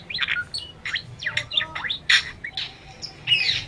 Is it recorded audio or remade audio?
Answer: recorded